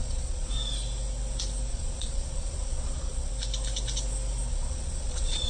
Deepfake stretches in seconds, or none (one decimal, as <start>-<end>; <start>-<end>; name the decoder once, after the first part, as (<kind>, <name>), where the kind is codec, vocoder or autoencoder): 0.0-0.5 (vocoder, Vocos); 1.7-3.3; 4.5-5.5

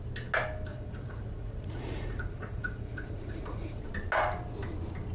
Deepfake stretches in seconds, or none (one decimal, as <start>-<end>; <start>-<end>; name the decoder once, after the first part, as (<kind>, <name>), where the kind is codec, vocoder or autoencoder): 0.7-3.8 (vocoder, Vocos)

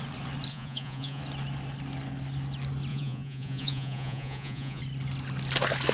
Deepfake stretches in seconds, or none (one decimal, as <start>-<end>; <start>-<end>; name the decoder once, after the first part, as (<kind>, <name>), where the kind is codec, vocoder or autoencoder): 0.5-1.2 (vocoder, Vocos); 2.9-4.8

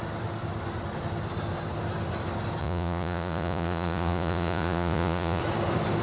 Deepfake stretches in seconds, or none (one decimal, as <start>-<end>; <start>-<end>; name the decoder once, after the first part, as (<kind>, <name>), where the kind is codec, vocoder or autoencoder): 2.6-5.4 (vocoder, Vocos)

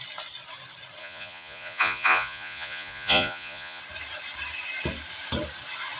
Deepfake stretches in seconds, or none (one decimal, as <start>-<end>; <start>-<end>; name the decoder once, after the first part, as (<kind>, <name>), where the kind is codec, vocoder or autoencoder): 1.0-3.8 (vocoder, Vocos)

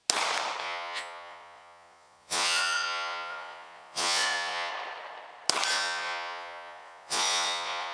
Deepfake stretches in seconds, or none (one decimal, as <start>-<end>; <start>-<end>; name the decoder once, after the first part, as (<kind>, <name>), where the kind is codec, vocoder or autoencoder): 0.6-4.7 (vocoder, Vocos); 5.7-7.9

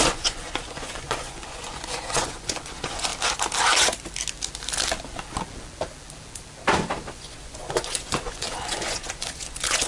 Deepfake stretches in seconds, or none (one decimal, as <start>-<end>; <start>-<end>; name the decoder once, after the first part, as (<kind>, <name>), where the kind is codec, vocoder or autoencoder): 0.0-3.1 (vocoder, Vocos); 7.1-9.9

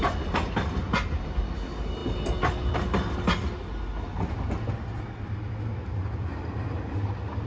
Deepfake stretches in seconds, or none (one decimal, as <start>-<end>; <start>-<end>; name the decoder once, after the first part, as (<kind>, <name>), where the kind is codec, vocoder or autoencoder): none